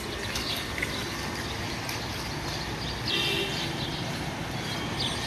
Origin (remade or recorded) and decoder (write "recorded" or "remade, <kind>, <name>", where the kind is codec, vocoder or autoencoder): recorded